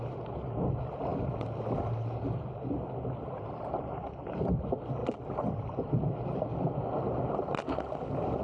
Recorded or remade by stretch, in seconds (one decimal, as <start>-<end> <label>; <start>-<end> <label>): 0.0-5.0 recorded; 5.0-5.7 remade; 5.7-8.4 recorded